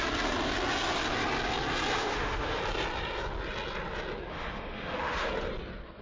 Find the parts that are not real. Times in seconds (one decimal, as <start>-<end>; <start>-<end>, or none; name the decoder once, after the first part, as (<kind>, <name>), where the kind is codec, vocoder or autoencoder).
2.0-2.6 (autoencoder, DAC-VAE); 4.3-5.3